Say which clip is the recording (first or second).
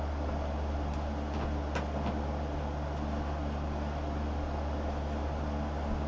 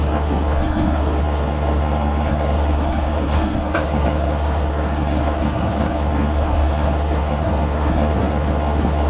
first